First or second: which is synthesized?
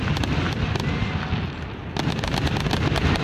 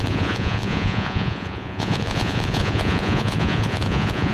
second